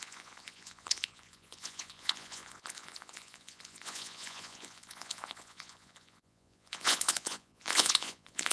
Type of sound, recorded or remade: remade